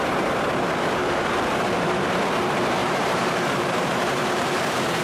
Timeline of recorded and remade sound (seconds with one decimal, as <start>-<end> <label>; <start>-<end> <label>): 0.0-1.0 recorded; 1.0-2.1 remade; 2.1-2.8 recorded; 2.8-5.0 remade